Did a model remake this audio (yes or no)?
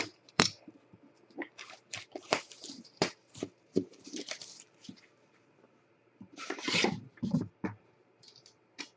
yes